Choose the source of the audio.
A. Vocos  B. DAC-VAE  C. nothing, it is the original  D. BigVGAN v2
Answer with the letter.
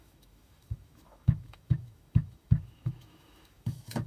B